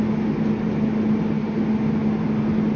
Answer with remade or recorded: recorded